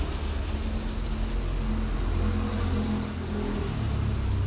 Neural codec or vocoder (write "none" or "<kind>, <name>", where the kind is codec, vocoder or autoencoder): none